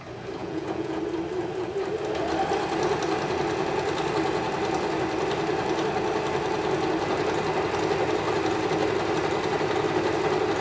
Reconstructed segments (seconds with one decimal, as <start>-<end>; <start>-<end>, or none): 0.4-1.0